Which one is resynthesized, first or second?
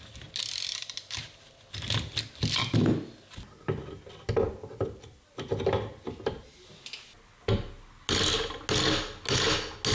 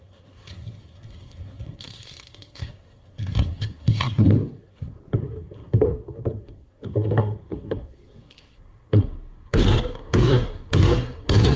second